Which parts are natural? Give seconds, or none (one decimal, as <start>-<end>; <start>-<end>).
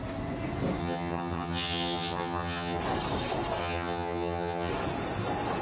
0.0-0.8; 2.8-3.6; 4.7-5.6